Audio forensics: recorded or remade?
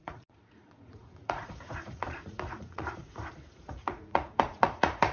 remade